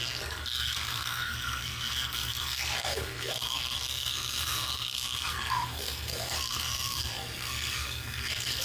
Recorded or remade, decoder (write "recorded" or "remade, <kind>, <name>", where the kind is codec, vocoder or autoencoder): remade, codec, SNAC